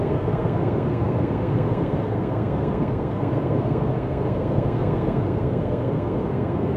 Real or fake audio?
fake